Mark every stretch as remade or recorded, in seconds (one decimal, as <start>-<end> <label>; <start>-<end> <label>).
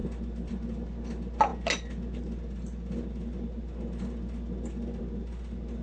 0.0-5.8 recorded